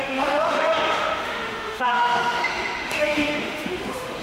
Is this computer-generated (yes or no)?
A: yes